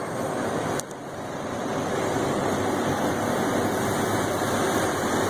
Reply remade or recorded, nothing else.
recorded